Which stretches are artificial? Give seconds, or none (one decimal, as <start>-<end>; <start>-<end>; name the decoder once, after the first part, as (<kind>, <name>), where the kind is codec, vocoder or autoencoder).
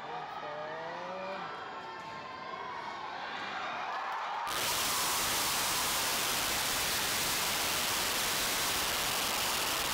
none